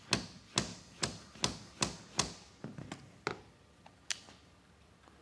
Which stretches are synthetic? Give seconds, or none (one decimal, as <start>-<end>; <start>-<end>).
none